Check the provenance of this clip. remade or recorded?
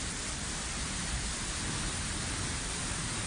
recorded